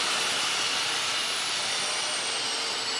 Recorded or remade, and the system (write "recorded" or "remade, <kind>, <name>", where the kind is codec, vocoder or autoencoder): recorded